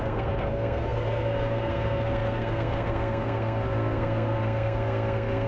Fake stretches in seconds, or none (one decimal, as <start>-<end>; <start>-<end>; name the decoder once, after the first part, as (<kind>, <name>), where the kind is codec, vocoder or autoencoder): 0.0-5.5 (codec, SNAC)